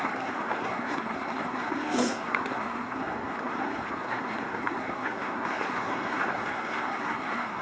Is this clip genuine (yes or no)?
no